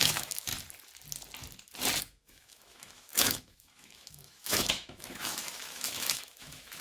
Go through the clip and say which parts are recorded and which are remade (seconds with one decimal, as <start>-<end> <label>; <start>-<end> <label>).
0.0-0.5 remade; 0.5-2.0 recorded; 2.0-6.8 remade